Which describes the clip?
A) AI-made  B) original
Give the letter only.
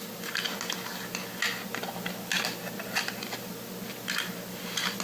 B